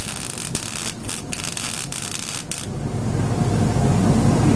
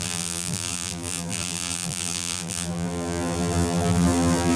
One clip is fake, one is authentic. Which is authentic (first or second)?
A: first